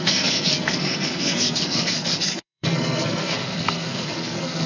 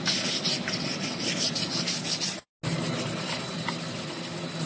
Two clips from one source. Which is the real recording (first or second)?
second